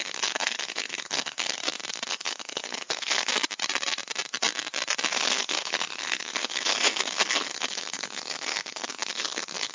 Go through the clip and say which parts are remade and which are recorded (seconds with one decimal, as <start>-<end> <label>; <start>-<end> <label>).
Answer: 0.0-1.6 remade; 1.6-2.1 recorded; 2.1-3.3 remade; 3.3-5.1 recorded; 5.1-9.7 remade